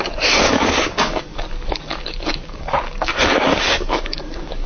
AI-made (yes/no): yes